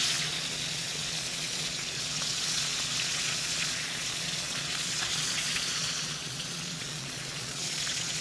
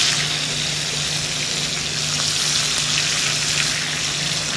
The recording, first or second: second